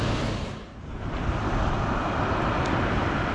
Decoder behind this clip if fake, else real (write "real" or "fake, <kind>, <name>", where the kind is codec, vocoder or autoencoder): real